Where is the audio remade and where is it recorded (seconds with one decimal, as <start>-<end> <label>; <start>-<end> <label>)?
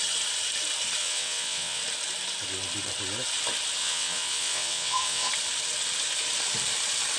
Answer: 0.0-1.0 recorded; 1.0-1.8 remade; 1.8-3.8 recorded; 3.8-5.3 remade; 5.3-7.2 recorded